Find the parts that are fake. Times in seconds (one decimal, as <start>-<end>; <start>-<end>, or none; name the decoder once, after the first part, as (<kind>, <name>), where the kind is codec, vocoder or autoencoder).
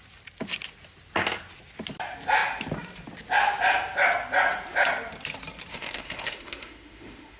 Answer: 5.7-7.4 (autoencoder, DAC-VAE)